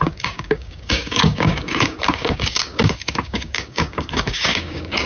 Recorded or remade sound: remade